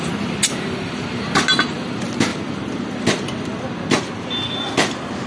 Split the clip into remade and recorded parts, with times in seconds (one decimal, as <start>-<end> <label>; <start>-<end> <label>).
0.0-5.3 recorded